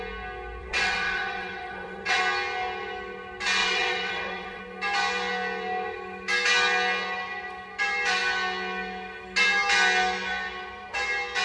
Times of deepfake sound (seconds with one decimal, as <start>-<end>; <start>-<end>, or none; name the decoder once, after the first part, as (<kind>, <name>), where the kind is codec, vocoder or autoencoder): 0.6-2.2 (vocoder, WaveNeXt); 3.6-4.6